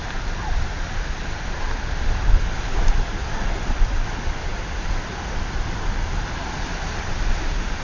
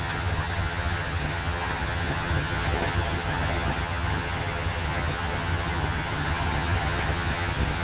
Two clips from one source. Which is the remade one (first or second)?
second